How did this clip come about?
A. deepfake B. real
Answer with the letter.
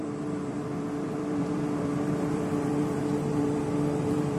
A